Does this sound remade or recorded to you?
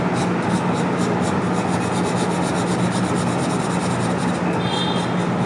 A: recorded